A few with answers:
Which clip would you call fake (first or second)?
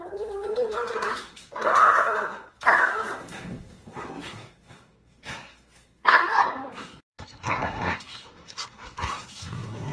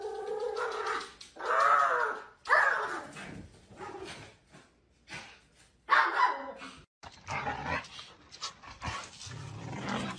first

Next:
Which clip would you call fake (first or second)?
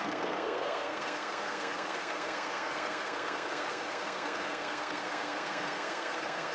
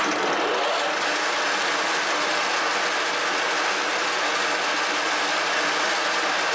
first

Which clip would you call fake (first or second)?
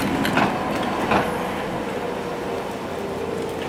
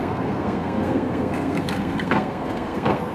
second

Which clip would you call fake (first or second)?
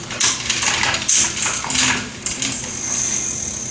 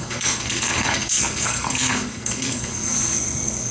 second